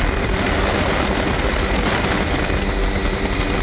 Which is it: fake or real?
real